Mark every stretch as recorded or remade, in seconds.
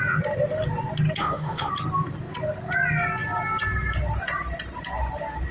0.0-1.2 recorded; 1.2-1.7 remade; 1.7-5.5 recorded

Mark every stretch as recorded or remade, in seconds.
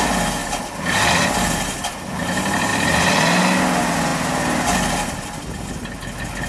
0.0-2.7 recorded; 2.7-3.4 remade; 3.4-6.5 recorded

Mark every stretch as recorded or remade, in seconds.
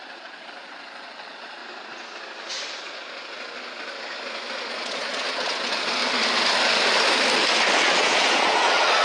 0.0-1.6 remade; 1.6-4.7 recorded; 4.7-6.0 remade; 6.0-7.8 recorded; 7.8-9.0 remade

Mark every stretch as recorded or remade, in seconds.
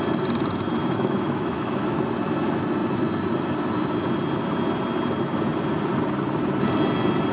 0.0-0.8 recorded; 0.8-2.0 remade; 2.0-7.3 recorded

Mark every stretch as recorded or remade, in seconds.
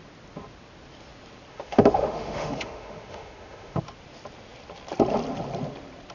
0.0-1.5 recorded; 1.5-3.8 remade; 3.8-6.1 recorded